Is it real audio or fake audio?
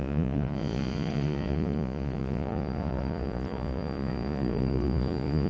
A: fake